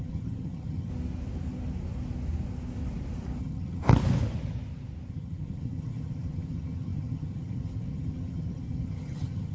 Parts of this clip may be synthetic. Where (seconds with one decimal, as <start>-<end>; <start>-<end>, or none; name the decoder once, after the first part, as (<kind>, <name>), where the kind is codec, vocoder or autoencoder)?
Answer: 0.0-0.9 (vocoder, HiFi-GAN); 3.4-3.8; 5.1-9.5